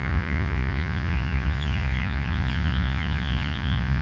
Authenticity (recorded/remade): remade